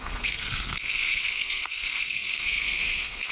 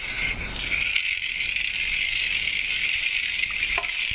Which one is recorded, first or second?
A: second